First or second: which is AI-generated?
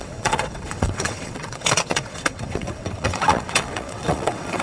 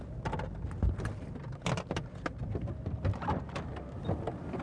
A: first